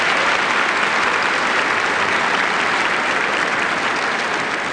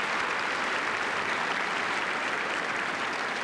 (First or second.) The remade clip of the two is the second